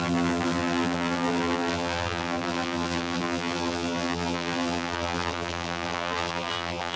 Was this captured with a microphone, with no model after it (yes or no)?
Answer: no